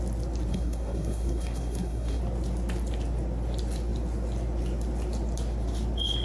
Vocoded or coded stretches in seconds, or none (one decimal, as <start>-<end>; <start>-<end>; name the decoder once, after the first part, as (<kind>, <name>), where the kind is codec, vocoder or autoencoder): 0.5-2.2 (codec, SNAC)